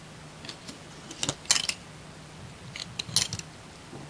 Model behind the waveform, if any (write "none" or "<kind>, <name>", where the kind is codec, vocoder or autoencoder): none